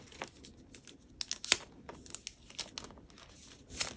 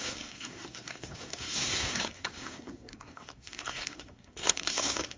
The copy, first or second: second